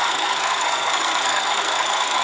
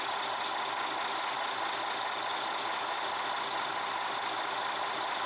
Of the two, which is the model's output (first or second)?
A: first